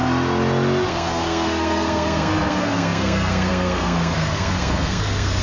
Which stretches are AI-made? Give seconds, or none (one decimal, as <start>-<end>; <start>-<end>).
0.9-5.4